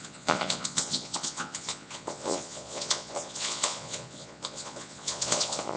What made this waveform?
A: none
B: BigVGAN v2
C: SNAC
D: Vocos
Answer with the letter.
D